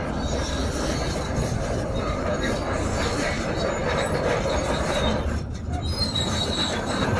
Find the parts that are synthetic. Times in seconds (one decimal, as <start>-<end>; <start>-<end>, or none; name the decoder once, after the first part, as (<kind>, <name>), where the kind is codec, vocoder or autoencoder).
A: none

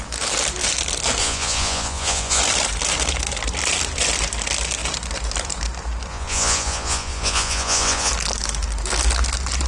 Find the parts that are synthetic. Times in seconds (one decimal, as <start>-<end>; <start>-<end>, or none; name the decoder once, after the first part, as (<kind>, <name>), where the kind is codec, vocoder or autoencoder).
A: 1.2-2.4 (vocoder, Vocos); 6.1-8.1